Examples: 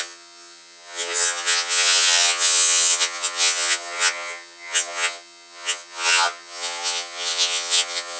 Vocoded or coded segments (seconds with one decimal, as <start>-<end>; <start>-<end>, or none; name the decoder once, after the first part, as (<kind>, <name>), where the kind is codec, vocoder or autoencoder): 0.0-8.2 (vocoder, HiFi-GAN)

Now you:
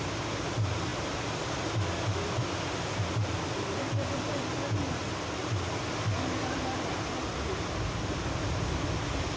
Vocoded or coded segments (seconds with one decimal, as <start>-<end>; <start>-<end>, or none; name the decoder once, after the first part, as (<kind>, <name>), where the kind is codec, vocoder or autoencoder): 0.9-1.4 (vocoder, BigVGAN v2)

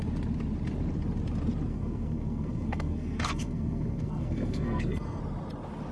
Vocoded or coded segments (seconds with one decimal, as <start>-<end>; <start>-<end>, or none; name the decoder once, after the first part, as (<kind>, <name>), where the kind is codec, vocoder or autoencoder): 1.7-5.2 (codec, SNAC)

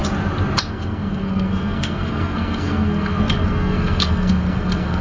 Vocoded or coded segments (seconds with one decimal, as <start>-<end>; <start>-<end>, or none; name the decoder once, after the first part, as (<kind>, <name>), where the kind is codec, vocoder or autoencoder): 0.7-5.0 (codec, SNAC)

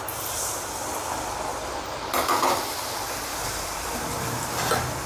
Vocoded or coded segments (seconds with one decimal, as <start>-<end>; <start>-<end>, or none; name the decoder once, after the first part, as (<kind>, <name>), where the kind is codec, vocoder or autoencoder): 3.3-4.4 (vocoder, BigVGAN v2)